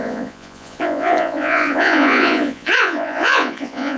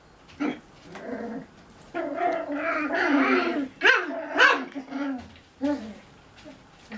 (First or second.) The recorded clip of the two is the second